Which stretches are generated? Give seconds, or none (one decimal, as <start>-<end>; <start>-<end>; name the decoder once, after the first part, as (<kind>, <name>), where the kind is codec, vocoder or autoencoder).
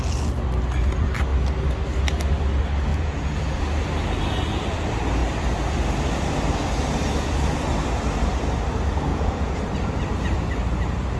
2.9-3.6 (vocoder, Vocos); 9.1-9.7